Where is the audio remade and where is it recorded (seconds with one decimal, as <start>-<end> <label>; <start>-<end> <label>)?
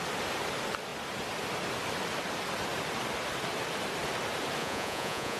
0.0-4.6 recorded; 4.6-5.4 remade